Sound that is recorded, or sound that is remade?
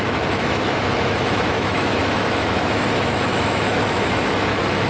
remade